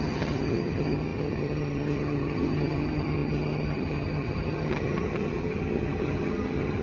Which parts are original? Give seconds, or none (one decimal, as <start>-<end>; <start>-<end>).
none